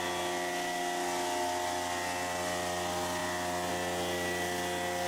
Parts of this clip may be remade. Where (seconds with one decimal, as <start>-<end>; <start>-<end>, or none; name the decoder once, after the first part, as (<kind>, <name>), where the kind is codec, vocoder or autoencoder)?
none